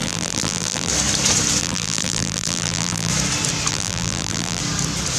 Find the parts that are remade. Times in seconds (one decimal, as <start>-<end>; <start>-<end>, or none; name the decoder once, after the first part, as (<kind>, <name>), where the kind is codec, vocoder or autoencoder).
0.0-0.9 (vocoder, BigVGAN v2); 1.6-3.1; 3.7-4.6